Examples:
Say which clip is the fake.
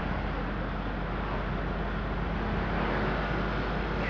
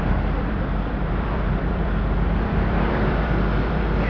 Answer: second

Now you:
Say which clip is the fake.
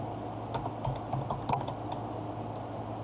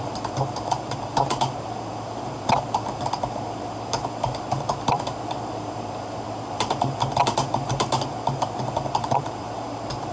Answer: second